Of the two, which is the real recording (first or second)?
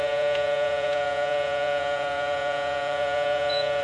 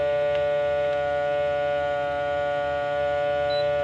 second